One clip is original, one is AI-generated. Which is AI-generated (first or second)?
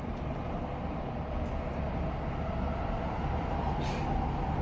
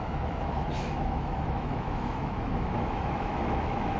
second